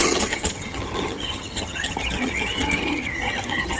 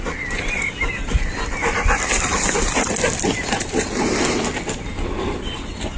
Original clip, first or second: second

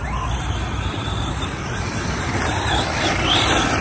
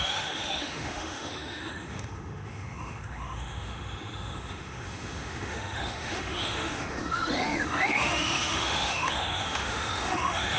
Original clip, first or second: first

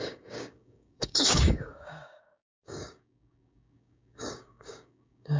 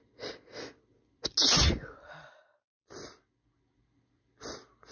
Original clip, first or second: second